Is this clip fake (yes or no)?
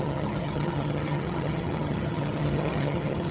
yes